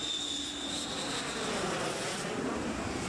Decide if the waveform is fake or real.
real